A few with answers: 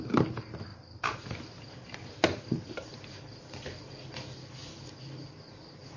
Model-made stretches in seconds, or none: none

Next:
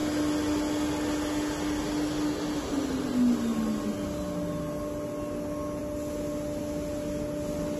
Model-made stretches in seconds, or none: none

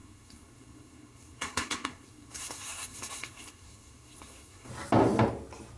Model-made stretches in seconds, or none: 0.0-4.7 (codec, SNAC)

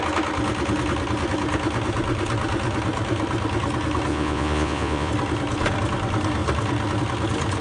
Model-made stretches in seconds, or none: 4.1-5.1 (vocoder, Vocos)